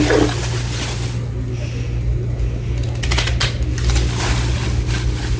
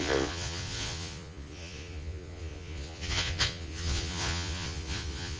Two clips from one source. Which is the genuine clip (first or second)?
first